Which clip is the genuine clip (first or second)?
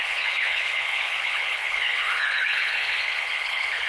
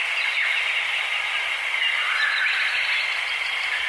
second